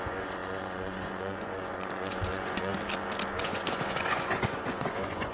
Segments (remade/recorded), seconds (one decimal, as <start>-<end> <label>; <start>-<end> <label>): 0.0-2.7 remade; 2.7-3.4 recorded; 3.4-5.3 remade